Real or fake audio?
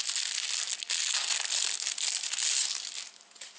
real